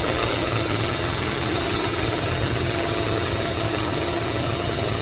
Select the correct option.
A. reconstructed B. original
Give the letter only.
A